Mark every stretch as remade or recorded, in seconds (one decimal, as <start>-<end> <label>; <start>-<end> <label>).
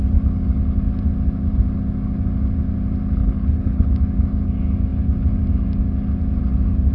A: 0.0-3.2 recorded; 3.2-3.9 remade; 3.9-6.9 recorded